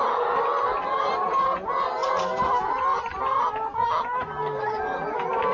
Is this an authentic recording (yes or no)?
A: yes